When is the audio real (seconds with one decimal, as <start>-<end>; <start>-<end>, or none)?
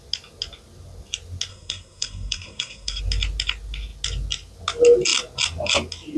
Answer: 0.0-1.5; 3.0-6.2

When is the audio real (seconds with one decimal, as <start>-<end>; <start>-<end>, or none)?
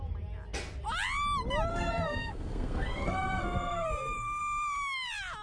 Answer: 0.0-1.7; 4.4-5.4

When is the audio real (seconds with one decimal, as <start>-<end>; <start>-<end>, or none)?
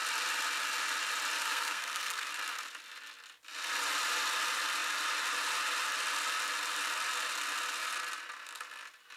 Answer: 0.0-1.4; 2.3-9.2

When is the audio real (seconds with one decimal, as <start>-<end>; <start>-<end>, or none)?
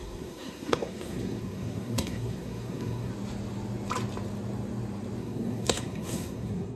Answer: 3.1-5.2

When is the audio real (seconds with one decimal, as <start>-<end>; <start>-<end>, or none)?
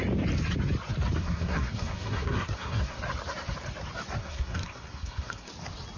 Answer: 0.0-1.2; 3.0-4.2; 5.5-6.0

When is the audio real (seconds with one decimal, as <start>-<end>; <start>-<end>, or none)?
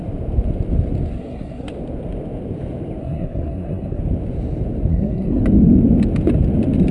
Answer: 0.0-1.1; 1.7-3.0; 4.0-4.9; 5.4-6.9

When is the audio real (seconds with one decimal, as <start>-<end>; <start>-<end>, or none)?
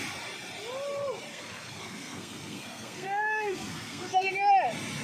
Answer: 0.0-1.3; 4.3-5.0